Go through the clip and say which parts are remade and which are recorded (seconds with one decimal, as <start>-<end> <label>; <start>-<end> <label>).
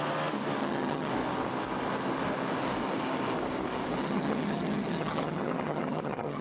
0.0-0.6 recorded; 0.6-1.1 remade; 1.1-4.0 recorded; 4.0-6.4 remade